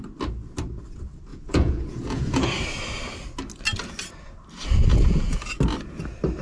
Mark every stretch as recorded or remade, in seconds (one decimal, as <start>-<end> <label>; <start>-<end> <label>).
0.0-1.3 recorded; 1.3-2.5 remade; 2.5-4.9 recorded; 4.9-5.6 remade; 5.6-6.4 recorded